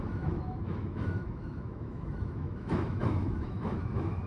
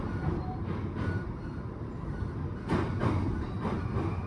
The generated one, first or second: first